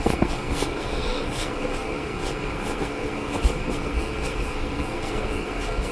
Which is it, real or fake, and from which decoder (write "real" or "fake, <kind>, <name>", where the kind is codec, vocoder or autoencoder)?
fake, codec, SNAC